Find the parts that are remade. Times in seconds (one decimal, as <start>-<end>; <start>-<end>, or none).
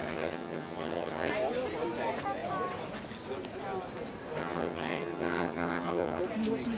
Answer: 0.0-1.3; 4.4-6.2